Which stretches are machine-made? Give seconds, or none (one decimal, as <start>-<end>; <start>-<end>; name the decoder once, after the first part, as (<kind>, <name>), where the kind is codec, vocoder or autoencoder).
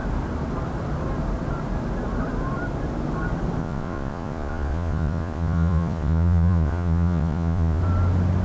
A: 3.6-7.8 (vocoder, Vocos)